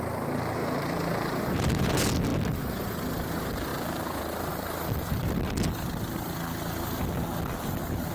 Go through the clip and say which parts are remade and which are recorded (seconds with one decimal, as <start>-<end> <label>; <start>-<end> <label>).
0.0-0.6 recorded; 0.6-1.8 remade; 1.8-3.7 recorded; 3.7-4.5 remade; 4.5-8.1 recorded